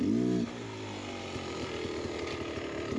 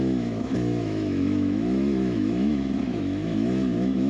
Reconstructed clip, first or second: second